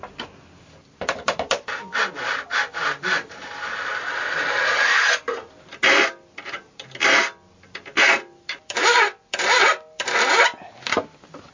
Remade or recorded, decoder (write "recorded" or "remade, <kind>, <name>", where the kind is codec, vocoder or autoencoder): remade, vocoder, BigVGAN v2